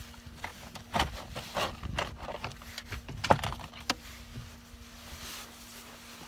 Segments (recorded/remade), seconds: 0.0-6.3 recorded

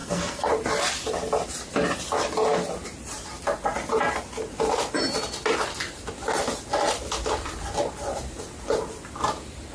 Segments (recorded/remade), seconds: 0.0-0.5 remade; 0.5-9.7 recorded

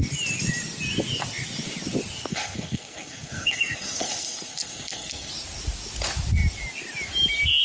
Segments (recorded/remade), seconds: 0.0-2.3 recorded; 2.3-5.3 remade; 5.3-7.6 recorded

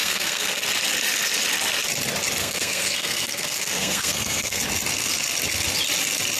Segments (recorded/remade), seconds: 0.0-0.6 remade; 0.6-2.4 recorded; 2.4-4.6 remade; 4.6-6.4 recorded

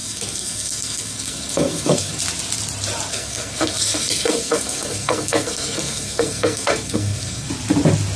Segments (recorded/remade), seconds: 0.0-2.2 remade; 2.2-3.1 recorded; 3.1-7.5 remade; 7.5-8.2 recorded